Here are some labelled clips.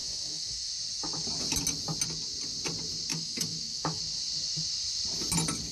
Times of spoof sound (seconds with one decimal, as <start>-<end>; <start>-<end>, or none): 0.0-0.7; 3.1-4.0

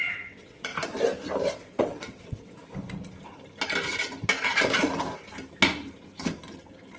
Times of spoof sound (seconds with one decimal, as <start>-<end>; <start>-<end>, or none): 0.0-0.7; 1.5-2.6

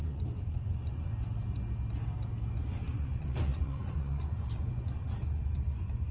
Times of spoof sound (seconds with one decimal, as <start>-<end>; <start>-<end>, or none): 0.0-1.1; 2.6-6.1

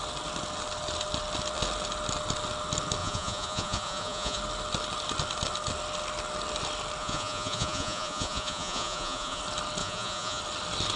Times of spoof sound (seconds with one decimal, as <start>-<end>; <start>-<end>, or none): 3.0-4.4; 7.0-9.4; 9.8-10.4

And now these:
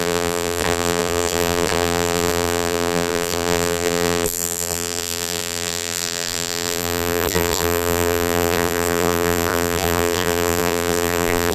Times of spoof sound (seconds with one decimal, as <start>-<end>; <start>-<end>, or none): 0.0-11.5

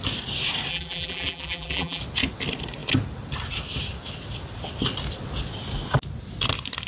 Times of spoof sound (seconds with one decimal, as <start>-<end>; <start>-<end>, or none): 0.7-2.0